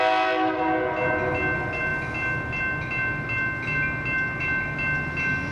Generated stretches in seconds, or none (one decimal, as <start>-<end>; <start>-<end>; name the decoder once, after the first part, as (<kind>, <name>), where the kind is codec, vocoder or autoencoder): none